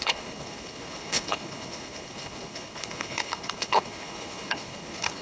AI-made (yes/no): yes